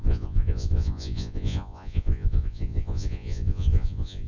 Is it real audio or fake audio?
fake